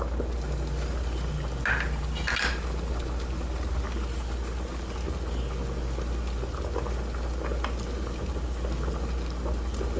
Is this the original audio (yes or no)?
yes